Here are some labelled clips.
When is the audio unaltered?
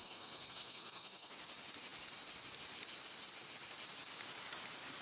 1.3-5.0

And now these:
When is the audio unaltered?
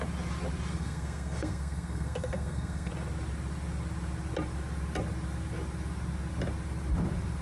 0.0-0.7; 2.9-7.4